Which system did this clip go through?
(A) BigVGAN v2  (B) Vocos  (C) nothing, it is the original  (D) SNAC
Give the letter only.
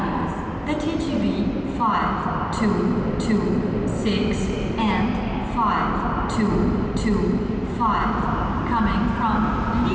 C